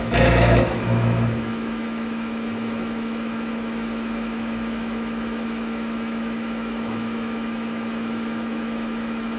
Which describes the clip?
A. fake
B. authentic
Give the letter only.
A